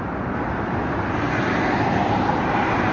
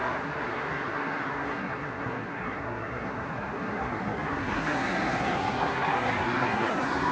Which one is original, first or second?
first